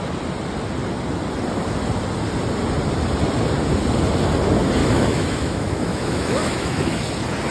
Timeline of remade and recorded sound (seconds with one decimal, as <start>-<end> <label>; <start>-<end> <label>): 0.0-4.8 recorded; 4.8-7.0 remade; 7.0-7.5 recorded